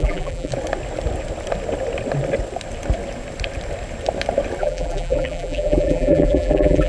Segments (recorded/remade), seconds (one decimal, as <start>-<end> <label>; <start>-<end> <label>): 0.0-0.5 remade; 0.5-4.6 recorded; 4.6-6.9 remade